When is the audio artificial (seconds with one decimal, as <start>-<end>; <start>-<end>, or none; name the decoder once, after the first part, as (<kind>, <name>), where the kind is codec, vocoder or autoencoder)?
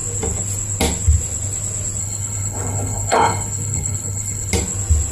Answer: 2.0-4.5 (codec, HILCodec)